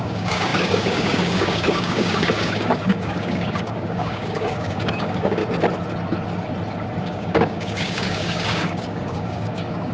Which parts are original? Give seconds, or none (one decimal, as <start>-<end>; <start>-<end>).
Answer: 5.4-7.0